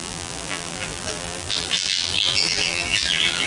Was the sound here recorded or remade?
remade